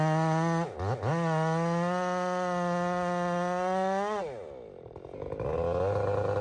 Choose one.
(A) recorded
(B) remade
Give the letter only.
A